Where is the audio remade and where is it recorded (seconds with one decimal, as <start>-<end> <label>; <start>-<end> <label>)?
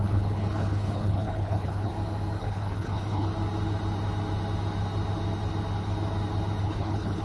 0.0-1.9 remade; 1.9-2.4 recorded; 2.4-3.3 remade; 3.3-6.6 recorded; 6.6-7.2 remade